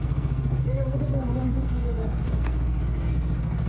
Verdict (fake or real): fake